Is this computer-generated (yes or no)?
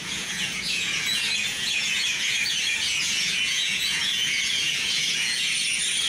yes